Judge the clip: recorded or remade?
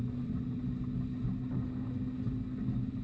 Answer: recorded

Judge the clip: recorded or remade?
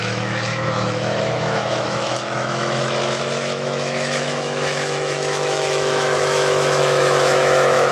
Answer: remade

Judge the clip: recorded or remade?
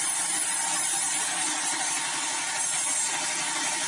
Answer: recorded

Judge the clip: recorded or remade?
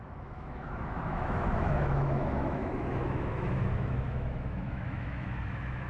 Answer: remade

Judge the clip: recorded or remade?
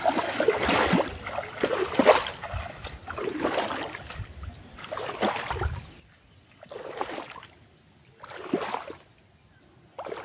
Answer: recorded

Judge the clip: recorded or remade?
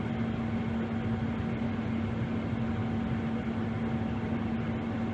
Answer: recorded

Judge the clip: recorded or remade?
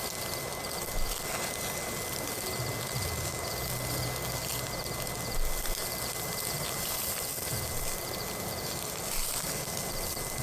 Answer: recorded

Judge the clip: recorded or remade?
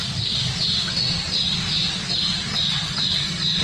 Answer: recorded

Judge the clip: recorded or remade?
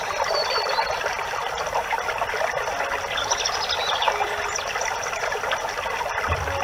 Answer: recorded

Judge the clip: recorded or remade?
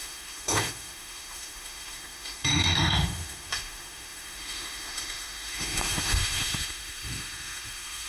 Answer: remade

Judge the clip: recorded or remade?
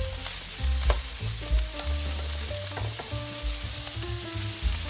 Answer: recorded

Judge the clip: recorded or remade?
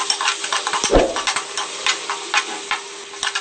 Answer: recorded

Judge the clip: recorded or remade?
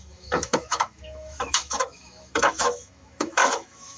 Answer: remade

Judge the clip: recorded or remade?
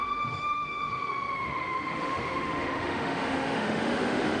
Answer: remade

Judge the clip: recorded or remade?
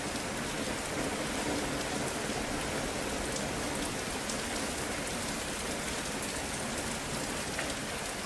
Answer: recorded